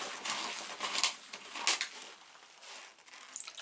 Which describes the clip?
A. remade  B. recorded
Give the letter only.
B